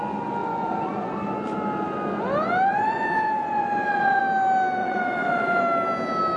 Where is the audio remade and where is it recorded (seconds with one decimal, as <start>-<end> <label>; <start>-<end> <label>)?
0.0-0.4 recorded; 0.4-1.1 remade; 1.1-2.7 recorded; 2.7-4.2 remade; 4.2-4.8 recorded; 4.8-5.6 remade; 5.6-6.4 recorded